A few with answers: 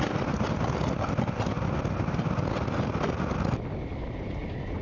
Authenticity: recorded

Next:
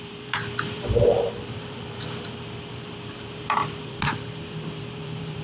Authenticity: remade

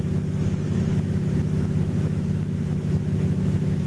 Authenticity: remade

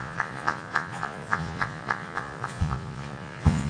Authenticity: remade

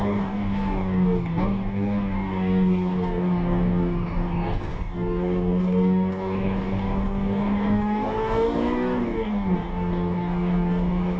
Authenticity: remade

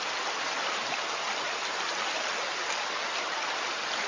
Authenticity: recorded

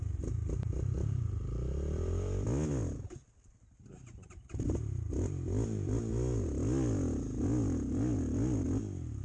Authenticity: recorded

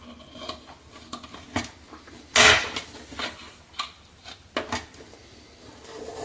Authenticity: recorded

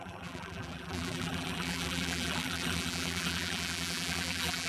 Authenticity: remade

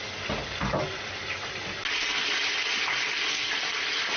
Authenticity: recorded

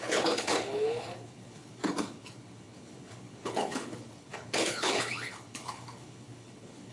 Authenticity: remade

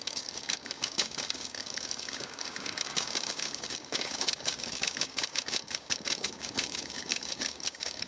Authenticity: remade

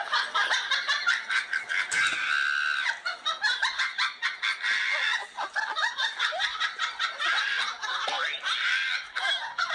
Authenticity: recorded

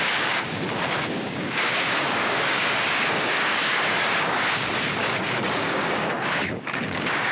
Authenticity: remade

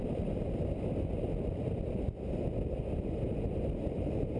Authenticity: recorded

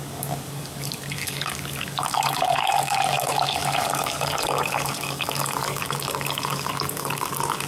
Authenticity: remade